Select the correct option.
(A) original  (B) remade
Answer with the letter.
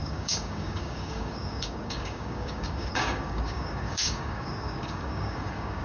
B